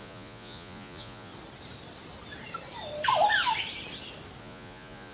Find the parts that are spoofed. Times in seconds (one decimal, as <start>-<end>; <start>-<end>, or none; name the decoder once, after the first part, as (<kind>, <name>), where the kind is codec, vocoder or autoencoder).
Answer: 0.0-1.3 (vocoder, Vocos); 4.4-5.1